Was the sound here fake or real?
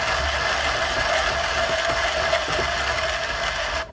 real